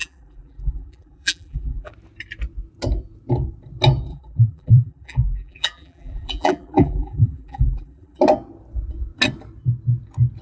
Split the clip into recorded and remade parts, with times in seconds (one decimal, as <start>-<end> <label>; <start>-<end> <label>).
0.0-1.9 remade; 1.9-4.1 recorded; 4.1-8.2 remade; 8.2-10.4 recorded